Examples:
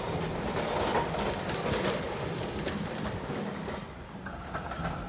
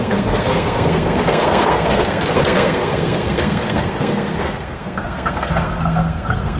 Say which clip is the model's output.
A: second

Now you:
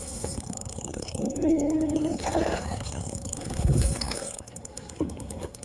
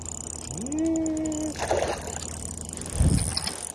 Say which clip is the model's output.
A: first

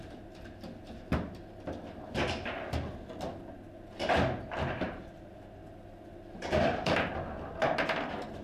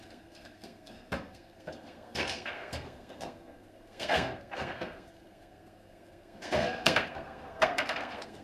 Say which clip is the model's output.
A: second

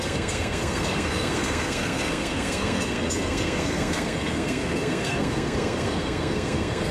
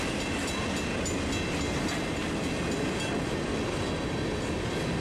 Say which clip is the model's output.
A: first